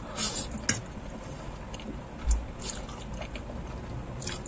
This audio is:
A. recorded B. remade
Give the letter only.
A